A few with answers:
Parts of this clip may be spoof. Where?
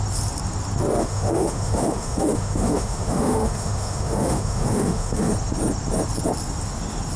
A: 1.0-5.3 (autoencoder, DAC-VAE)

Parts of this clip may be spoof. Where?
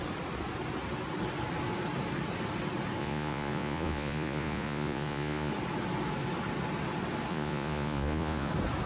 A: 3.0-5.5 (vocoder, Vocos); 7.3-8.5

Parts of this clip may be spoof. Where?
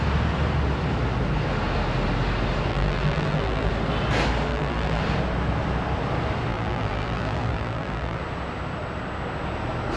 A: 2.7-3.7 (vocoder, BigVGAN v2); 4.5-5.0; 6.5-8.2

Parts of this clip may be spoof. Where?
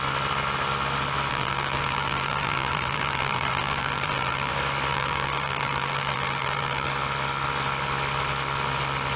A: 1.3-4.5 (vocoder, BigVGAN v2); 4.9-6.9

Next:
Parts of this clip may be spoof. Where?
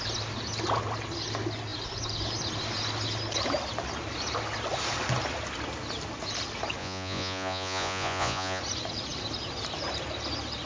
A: 6.8-8.6 (vocoder, Vocos)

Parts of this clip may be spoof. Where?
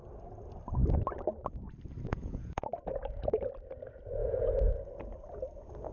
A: 2.1-3.5 (vocoder, Vocos); 4.2-4.7